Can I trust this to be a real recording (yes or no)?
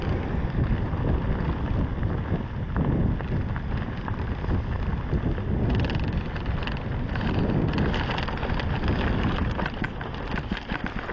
yes